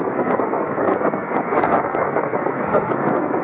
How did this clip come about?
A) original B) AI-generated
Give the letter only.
B